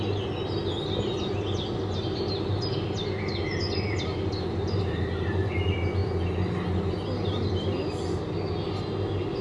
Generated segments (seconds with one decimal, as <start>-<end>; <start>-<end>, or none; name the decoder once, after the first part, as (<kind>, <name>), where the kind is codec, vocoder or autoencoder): none